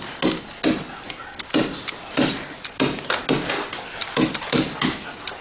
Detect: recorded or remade recorded